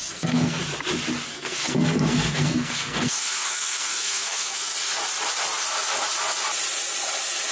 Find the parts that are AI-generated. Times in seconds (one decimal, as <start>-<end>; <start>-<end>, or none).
0.0-0.6; 1.3-4.7